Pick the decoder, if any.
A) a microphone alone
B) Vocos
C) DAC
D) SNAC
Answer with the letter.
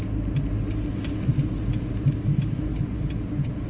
A